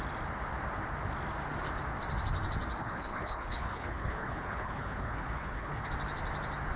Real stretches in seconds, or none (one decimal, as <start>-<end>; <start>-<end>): 0.0-2.8; 5.9-6.8